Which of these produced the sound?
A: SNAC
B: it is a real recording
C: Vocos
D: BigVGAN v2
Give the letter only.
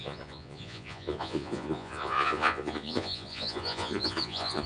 C